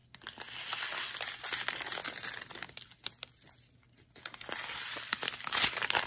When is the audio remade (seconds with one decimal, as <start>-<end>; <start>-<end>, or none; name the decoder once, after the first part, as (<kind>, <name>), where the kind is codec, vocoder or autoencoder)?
none